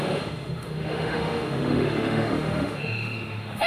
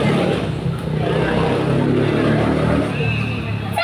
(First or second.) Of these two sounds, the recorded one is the second